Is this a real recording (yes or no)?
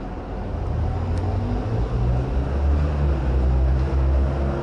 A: yes